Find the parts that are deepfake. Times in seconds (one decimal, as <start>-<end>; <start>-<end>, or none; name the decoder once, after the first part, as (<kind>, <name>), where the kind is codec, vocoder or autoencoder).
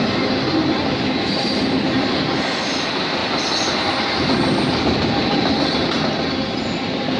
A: none